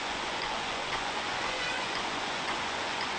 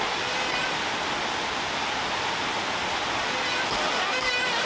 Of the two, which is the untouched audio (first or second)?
second